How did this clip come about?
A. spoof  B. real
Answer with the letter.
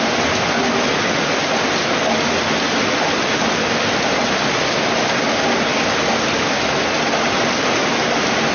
B